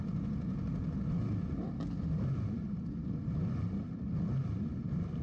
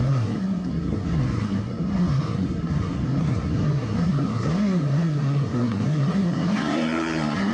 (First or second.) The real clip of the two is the first